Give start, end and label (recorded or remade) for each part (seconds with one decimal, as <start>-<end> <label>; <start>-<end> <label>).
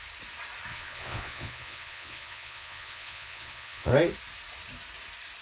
0.0-0.7 recorded; 0.7-3.9 remade; 3.9-5.4 recorded